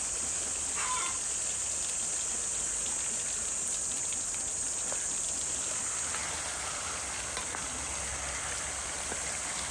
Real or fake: real